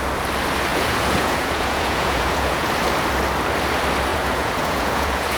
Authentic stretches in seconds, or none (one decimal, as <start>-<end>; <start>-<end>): 0.0-0.7; 2.8-4.1